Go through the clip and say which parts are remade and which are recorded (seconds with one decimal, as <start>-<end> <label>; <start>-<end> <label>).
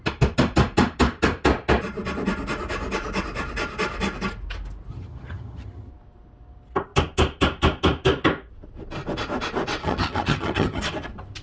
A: 0.0-4.9 recorded; 4.9-5.9 remade; 5.9-9.8 recorded; 9.8-10.8 remade; 10.8-11.4 recorded